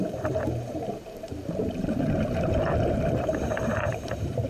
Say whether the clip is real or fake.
fake